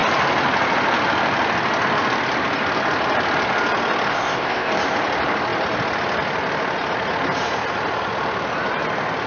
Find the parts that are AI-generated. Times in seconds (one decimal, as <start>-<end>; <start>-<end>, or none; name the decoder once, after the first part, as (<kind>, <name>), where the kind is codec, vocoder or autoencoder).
4.1-4.7 (codec, ZipCodec)

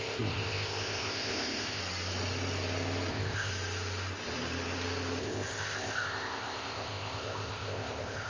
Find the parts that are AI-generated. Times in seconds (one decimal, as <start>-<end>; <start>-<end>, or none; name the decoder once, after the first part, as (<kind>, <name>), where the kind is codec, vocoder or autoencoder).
0.0-1.8 (codec, ZipCodec); 3.1-3.5; 5.2-8.3

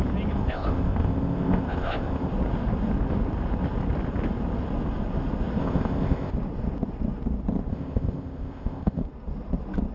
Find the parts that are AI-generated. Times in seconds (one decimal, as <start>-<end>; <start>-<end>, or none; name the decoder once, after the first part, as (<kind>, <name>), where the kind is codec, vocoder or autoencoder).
0.4-2.3 (codec, ZipCodec); 5.6-6.3; 7.7-9.0

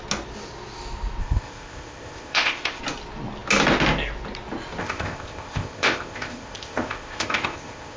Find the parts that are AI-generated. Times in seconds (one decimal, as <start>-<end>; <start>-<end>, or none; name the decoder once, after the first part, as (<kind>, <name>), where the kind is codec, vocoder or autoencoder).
1.2-2.8 (codec, ZipCodec); 4.8-8.0

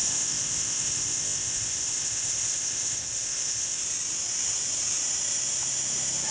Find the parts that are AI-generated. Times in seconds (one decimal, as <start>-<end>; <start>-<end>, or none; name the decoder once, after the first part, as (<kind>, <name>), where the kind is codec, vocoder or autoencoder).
0.0-3.8 (codec, ZipCodec)